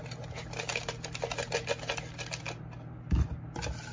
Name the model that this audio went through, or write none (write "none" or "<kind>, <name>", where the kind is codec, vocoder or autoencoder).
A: none